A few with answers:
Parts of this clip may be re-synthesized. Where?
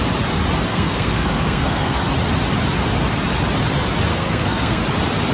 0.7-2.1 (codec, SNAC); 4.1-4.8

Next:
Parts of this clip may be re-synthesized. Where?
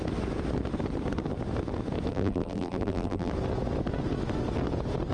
2.1-3.3 (vocoder, BigVGAN v2)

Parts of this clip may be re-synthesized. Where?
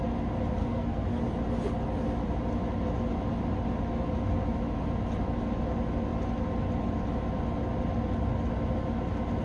0.6-1.2 (codec, SNAC)